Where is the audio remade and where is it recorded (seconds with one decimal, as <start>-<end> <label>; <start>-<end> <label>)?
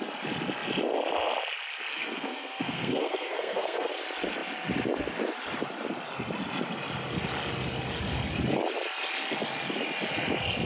0.0-1.9 recorded; 1.9-3.9 remade; 3.9-10.7 recorded